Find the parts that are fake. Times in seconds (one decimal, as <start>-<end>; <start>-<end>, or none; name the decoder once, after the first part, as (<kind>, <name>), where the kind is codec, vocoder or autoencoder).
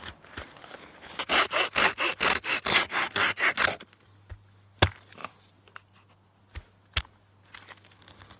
2.7-3.5 (codec, SNAC)